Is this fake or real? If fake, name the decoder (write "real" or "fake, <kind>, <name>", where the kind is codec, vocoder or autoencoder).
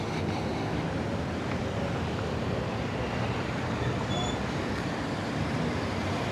fake, vocoder, BigVGAN v2